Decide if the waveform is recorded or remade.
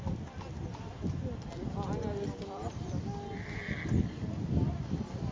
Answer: recorded